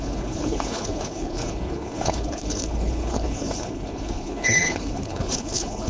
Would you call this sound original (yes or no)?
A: no